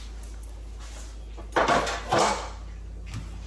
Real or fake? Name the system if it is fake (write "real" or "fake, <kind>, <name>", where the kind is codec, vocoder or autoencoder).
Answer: real